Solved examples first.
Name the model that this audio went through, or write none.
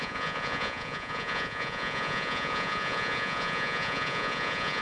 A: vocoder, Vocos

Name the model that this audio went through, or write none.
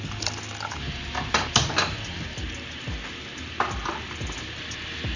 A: none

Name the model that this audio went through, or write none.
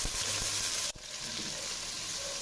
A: none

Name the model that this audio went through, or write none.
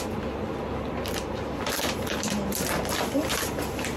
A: vocoder, BigVGAN v2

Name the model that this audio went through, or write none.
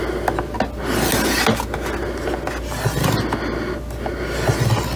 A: none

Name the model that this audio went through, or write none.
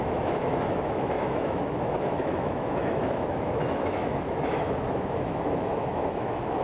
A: autoencoder, DAC-VAE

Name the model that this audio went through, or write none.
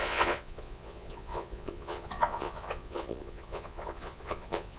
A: vocoder, Vocos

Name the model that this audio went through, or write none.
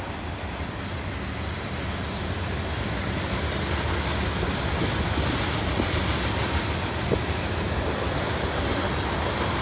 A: none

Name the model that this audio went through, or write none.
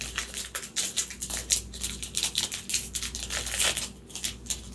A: none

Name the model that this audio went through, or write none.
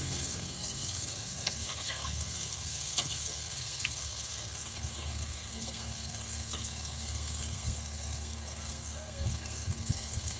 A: codec, SNAC